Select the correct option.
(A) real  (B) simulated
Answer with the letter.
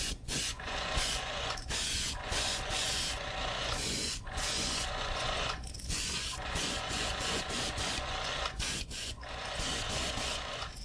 B